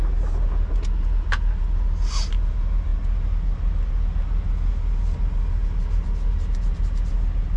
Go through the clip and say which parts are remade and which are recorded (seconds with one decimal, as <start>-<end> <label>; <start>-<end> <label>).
0.0-7.6 recorded